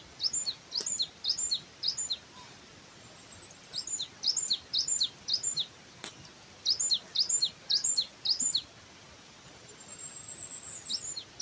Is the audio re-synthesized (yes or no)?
no